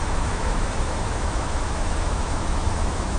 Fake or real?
fake